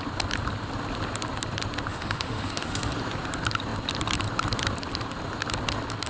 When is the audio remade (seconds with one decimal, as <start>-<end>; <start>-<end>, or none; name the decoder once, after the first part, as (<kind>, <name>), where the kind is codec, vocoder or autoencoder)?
1.9-2.9 (autoencoder, DAC-VAE)